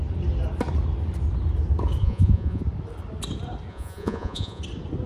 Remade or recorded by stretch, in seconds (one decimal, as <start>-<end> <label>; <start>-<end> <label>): 0.0-2.0 recorded; 2.0-2.6 remade; 2.6-3.7 recorded; 3.7-4.6 remade; 4.6-5.1 recorded